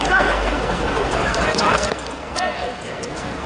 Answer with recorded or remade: remade